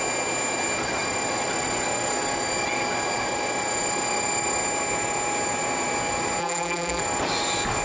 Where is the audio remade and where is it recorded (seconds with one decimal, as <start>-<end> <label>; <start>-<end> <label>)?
0.0-6.4 recorded; 6.4-7.0 remade; 7.0-7.8 recorded